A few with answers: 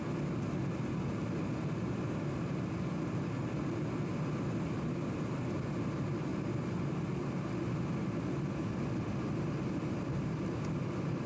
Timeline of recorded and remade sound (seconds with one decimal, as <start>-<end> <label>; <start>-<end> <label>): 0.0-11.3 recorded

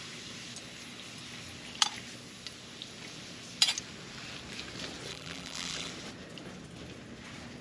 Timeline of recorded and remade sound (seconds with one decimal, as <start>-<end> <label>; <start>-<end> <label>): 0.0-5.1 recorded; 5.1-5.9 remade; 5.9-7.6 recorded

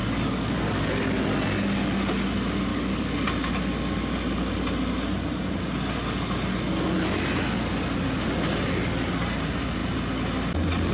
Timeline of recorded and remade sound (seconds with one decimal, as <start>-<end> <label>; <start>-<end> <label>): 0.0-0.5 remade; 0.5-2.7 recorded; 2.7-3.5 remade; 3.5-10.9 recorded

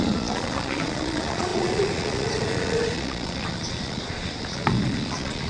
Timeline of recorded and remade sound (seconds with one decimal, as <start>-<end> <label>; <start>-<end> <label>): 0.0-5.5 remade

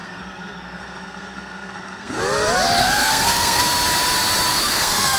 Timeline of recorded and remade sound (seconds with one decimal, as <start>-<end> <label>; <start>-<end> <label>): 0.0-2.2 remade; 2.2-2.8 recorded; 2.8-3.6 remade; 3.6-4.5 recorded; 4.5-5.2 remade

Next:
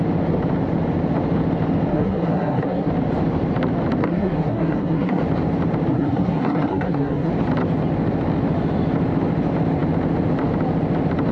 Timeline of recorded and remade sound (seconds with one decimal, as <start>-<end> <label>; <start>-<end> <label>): 0.0-1.9 recorded; 1.9-2.9 remade; 2.9-4.0 recorded; 4.0-5.2 remade; 5.2-5.9 recorded; 5.9-7.3 remade; 7.3-11.3 recorded

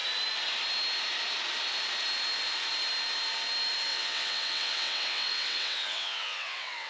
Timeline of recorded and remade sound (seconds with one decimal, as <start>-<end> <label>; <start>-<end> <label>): 0.0-3.9 recorded; 3.9-6.9 remade